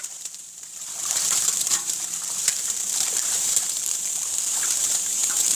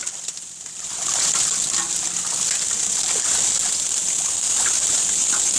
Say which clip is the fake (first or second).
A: first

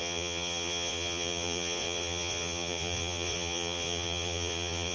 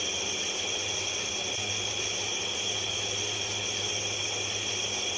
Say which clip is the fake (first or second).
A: first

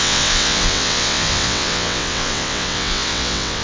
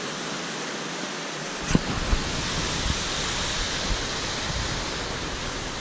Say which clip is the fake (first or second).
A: first